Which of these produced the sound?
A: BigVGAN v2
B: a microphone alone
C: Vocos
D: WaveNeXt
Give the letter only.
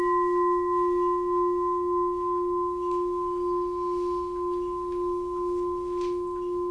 B